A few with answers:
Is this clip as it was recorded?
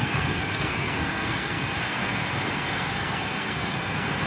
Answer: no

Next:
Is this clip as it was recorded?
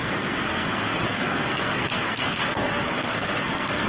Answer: no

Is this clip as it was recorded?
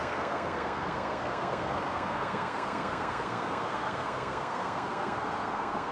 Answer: no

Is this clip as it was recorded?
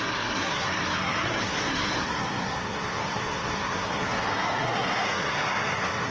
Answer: no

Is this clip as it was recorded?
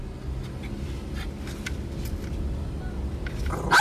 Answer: yes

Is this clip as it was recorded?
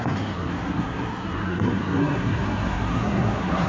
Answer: no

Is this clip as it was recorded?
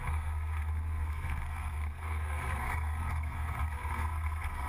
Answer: no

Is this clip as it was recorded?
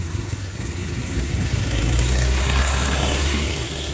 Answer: no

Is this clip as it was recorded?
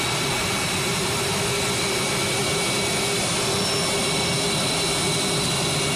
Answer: yes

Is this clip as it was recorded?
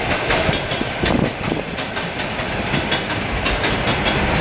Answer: yes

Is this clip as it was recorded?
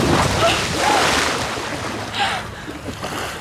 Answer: yes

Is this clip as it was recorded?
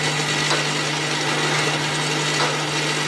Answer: yes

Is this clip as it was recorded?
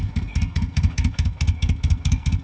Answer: no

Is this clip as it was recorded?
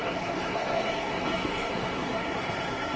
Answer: no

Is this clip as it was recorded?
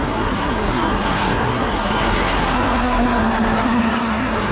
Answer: no